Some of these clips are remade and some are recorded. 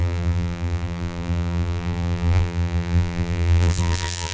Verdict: remade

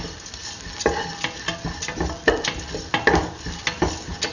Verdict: recorded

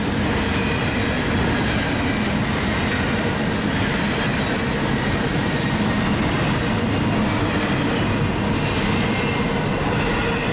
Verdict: recorded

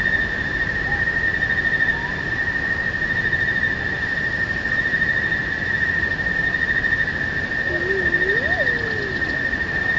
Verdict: recorded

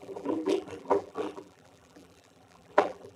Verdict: remade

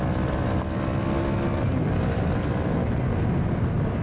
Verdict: recorded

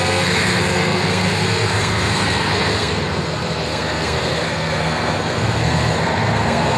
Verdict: remade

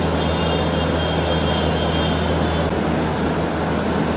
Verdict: recorded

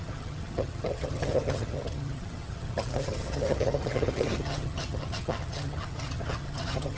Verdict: remade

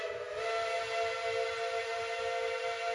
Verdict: recorded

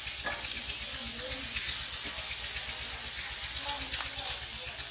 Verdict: recorded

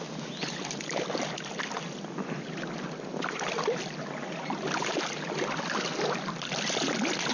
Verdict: recorded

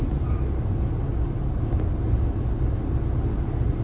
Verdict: recorded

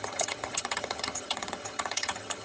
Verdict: remade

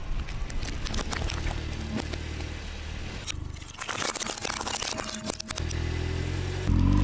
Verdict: recorded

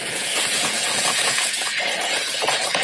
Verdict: remade